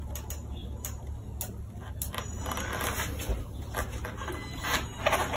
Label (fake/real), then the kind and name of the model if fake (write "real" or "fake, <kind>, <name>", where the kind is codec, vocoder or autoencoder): real